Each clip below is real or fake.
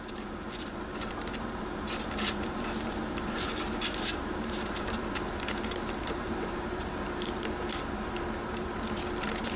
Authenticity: fake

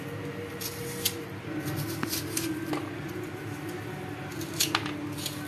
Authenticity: real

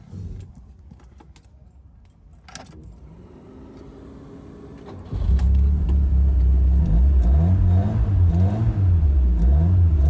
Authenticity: real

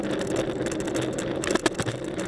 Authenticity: real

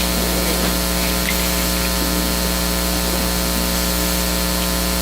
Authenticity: real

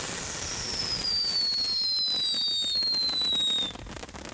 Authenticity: real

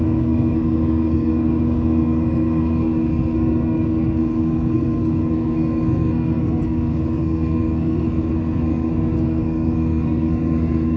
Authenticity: fake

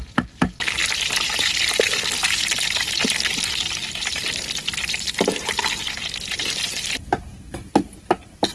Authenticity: real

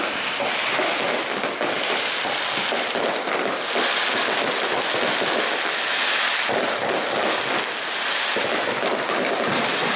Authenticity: real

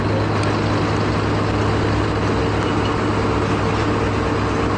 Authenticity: real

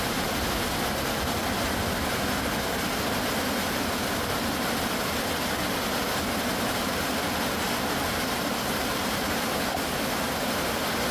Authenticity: real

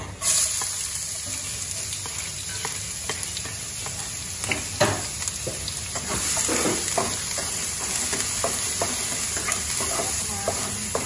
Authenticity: real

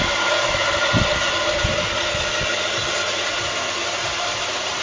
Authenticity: real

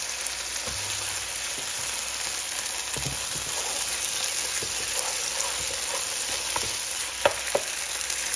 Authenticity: real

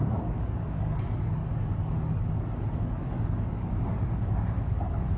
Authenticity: fake